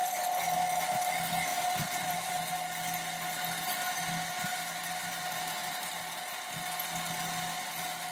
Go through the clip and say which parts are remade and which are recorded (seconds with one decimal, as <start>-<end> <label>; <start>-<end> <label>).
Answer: 0.0-1.5 recorded; 1.5-2.5 remade; 2.5-4.5 recorded; 4.5-6.0 remade; 6.0-8.1 recorded